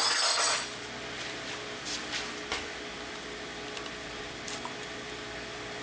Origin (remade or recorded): recorded